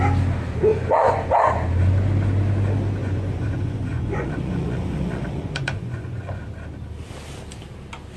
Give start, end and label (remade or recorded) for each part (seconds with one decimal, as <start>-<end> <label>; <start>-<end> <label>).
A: 0.0-0.7 recorded; 0.7-1.3 remade; 1.3-3.0 recorded; 3.0-6.4 remade; 6.4-8.2 recorded